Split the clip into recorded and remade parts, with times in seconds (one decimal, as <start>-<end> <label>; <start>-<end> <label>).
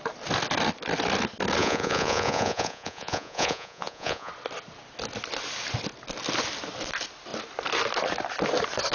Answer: 0.0-1.6 recorded; 1.6-4.3 remade; 4.3-8.9 recorded